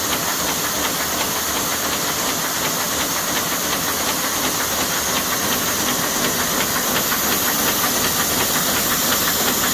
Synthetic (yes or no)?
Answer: no